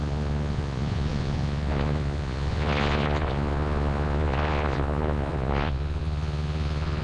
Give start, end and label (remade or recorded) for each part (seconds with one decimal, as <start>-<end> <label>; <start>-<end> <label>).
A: 0.0-7.0 remade